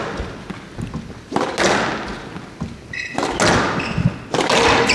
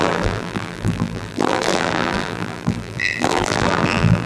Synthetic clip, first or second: second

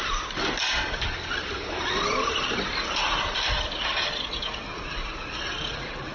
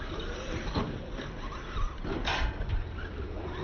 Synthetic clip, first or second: second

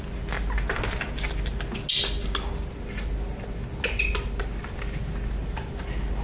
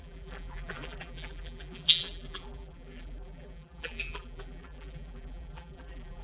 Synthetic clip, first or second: second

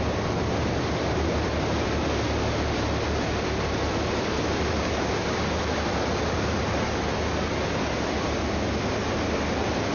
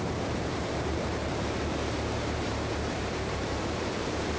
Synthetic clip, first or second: second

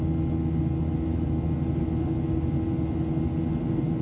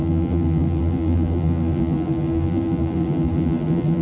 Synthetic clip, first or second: second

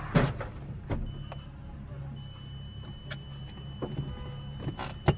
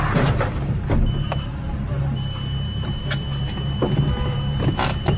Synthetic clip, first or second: second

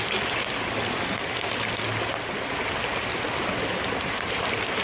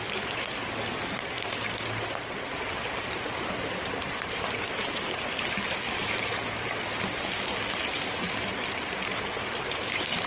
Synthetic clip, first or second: second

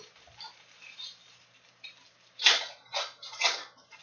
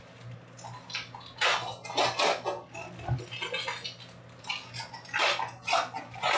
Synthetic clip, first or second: first